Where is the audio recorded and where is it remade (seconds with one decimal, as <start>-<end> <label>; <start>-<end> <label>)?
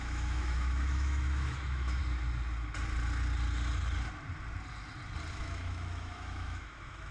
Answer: 0.0-2.0 remade; 2.0-5.3 recorded; 5.3-7.1 remade